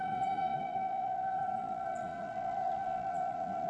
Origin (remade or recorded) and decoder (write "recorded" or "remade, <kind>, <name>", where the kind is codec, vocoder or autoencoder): remade, vocoder, Vocos